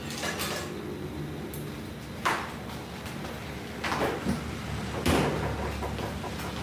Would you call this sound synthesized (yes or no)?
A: no